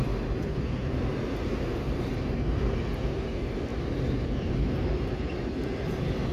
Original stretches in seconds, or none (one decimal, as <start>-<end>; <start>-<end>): 0.0-1.7; 2.6-6.3